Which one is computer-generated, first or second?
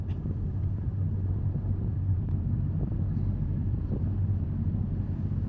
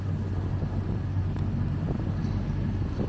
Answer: first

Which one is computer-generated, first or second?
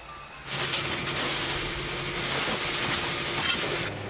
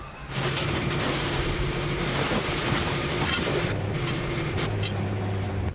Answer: second